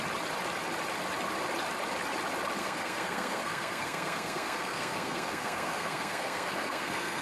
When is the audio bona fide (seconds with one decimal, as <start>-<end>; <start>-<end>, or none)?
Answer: 0.0-2.6